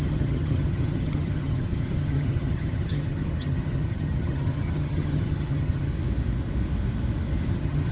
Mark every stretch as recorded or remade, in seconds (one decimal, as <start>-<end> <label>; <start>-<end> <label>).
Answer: 0.0-5.9 remade; 5.9-7.5 recorded; 7.5-7.9 remade